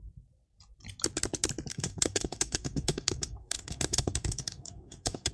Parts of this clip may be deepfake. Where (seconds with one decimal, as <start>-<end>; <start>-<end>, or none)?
1.7-5.3